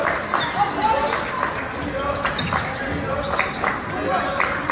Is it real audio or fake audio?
real